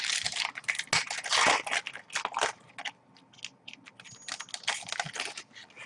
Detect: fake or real real